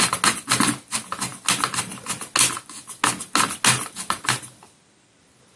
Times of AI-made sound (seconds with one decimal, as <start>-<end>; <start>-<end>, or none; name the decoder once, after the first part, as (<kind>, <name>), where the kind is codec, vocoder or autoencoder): none